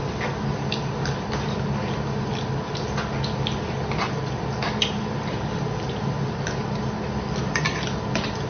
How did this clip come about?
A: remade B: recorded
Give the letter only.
B